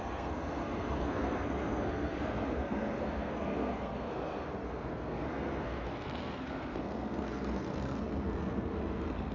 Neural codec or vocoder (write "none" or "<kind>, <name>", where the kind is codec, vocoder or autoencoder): codec, SNAC